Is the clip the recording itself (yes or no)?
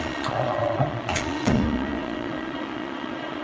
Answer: no